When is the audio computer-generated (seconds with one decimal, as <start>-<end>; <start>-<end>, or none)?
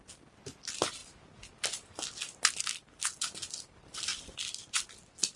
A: none